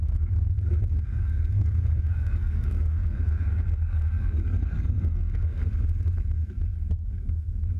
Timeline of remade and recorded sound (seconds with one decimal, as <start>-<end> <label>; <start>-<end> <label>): 0.0-6.6 remade; 6.6-7.1 recorded; 7.1-7.8 remade